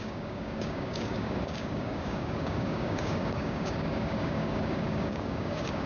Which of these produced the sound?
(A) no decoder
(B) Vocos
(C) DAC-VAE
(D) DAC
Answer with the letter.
D